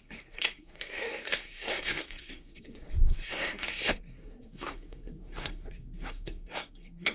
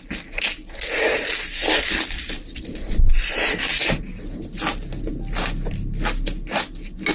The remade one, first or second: first